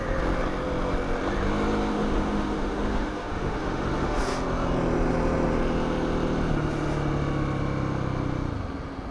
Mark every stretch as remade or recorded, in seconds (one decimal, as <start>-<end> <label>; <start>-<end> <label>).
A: 0.0-1.9 recorded; 1.9-4.2 remade; 4.2-9.1 recorded